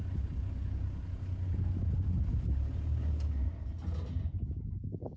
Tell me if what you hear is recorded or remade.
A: recorded